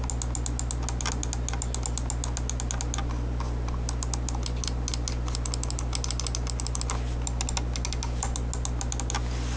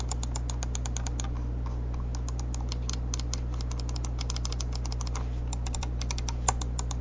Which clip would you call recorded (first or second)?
first